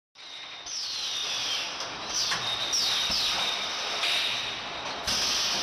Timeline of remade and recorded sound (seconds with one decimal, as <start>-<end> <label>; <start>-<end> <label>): 0.0-5.6 recorded